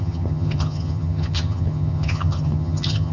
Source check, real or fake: fake